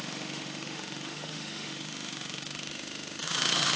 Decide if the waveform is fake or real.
fake